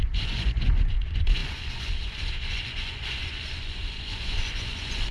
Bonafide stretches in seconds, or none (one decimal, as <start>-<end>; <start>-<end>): none